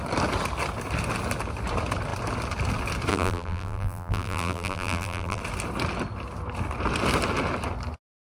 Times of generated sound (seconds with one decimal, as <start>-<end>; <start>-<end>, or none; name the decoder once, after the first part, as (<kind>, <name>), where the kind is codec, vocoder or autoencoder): 3.1-5.4 (vocoder, BigVGAN v2)